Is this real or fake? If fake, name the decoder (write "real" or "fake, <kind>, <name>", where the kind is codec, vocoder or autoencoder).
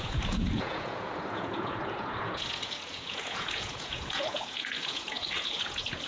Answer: fake, vocoder, Vocos